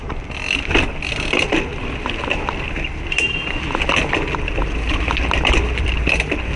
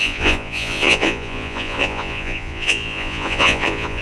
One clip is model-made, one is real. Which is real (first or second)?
first